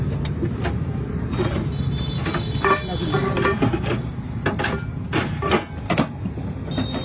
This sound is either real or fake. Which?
real